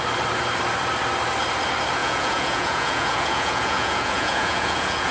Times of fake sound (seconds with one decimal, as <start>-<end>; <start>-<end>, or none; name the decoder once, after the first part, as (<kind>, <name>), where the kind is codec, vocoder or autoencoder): 2.0-5.1 (vocoder, Vocos)

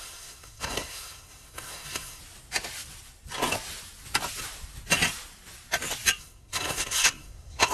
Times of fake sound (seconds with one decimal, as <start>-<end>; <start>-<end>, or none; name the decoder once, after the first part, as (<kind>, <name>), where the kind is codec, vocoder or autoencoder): 0.0-2.2 (codec, SNAC); 6.2-7.7

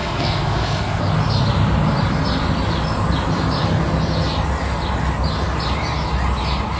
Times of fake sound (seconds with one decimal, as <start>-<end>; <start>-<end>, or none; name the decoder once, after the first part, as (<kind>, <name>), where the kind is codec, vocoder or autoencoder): 0.0-1.0 (codec, SNAC)

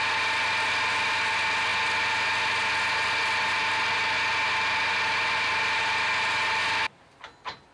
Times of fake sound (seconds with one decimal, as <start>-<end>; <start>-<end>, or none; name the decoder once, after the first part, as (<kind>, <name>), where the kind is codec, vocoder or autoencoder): none

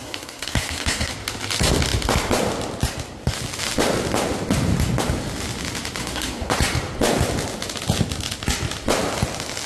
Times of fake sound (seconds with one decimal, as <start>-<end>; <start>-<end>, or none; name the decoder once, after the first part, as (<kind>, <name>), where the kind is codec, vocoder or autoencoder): 0.0-1.1 (codec, SNAC); 6.0-6.5

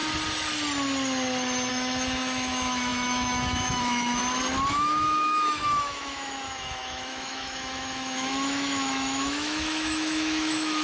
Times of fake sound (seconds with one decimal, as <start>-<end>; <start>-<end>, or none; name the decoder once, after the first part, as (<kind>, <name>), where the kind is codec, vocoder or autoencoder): 1.7-4.2 (autoencoder, DAC-VAE); 4.7-10.8

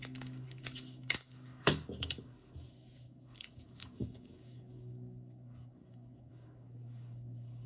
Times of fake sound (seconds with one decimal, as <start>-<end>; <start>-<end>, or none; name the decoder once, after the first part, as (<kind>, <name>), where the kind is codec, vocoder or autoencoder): 0.0-7.7 (codec, DAC)